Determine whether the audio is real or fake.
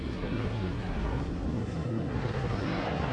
fake